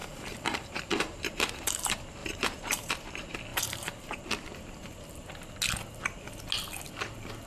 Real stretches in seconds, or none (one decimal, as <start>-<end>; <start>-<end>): 1.8-2.2; 2.9-3.5; 4.2-7.5